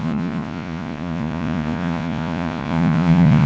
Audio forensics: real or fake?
fake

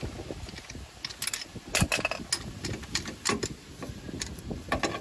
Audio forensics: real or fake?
real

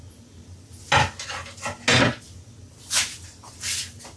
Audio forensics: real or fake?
real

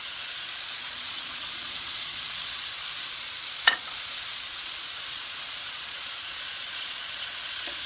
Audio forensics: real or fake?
fake